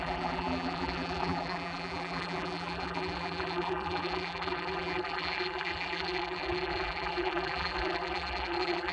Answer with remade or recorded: remade